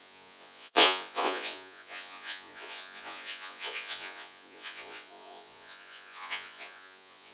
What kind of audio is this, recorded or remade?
remade